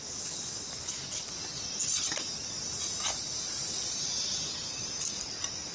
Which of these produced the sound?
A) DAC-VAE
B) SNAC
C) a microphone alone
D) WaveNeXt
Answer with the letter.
C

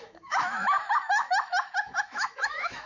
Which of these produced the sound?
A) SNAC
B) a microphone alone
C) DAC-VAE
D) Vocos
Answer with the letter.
C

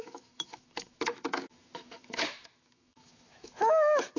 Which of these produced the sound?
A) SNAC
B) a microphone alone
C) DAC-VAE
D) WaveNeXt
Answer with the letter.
C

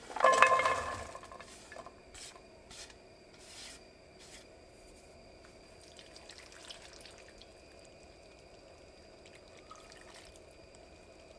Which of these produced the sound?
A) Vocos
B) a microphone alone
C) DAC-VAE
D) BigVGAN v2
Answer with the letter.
B